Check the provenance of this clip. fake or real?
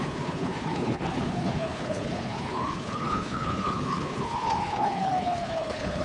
fake